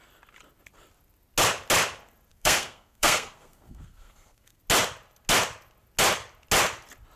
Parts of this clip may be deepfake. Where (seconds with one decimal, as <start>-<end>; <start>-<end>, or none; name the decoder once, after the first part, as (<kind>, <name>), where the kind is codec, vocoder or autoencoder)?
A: 2.3-4.6 (codec, SNAC)